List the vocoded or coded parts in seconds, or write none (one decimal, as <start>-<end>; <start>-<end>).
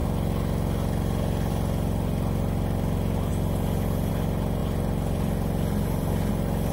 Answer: 4.6-6.3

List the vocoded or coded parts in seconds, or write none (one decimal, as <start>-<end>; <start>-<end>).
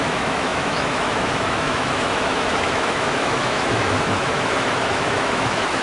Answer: 0.0-5.8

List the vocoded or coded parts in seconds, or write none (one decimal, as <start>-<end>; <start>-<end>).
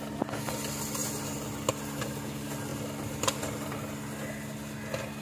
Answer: none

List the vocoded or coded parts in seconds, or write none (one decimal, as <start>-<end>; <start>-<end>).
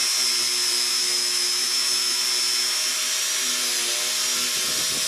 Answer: 0.9-2.2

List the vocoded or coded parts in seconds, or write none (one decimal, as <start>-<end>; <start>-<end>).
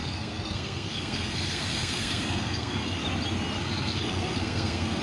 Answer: 0.0-3.0; 3.6-5.0